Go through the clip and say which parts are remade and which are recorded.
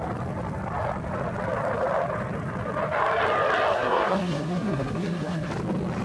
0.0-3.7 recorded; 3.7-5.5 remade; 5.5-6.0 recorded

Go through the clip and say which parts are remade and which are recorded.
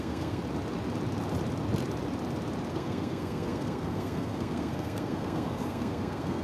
0.0-0.4 remade; 0.4-2.7 recorded; 2.7-6.4 remade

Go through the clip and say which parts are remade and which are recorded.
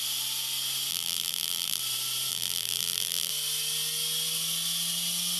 0.0-0.9 recorded; 0.9-1.8 remade; 1.8-2.3 recorded; 2.3-3.3 remade; 3.3-5.4 recorded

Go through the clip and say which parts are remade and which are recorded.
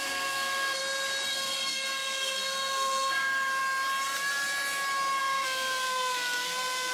0.0-0.8 remade; 0.8-1.3 recorded; 1.3-3.6 remade; 3.6-5.2 recorded; 5.2-6.9 remade